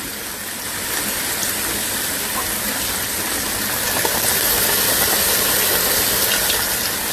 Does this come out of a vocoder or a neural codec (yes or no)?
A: no